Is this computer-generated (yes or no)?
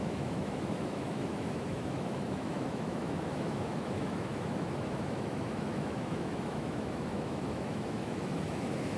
yes